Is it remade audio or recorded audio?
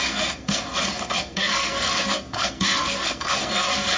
remade